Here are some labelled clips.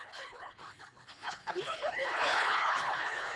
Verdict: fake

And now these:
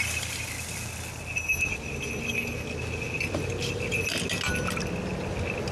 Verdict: real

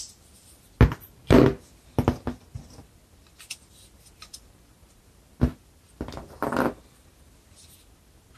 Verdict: real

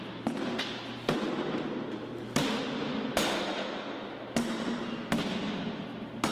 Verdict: real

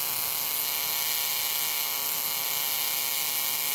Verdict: real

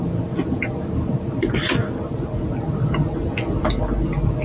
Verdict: real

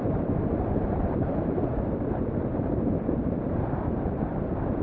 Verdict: fake